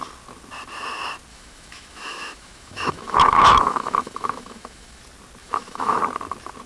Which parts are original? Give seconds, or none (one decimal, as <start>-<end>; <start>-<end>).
0.0-1.3; 5.0-5.4; 6.0-6.7